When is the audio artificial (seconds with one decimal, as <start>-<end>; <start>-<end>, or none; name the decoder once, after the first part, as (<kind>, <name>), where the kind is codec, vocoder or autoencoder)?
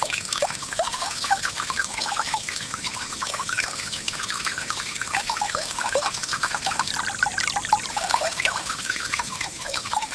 0.0-6.9 (autoencoder, DAC-VAE); 7.9-10.1